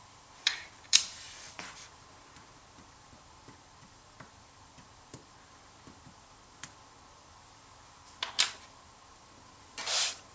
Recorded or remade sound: remade